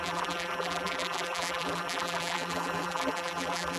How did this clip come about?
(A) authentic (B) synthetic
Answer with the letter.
B